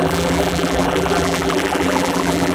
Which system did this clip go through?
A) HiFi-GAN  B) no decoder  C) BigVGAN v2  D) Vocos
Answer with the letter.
C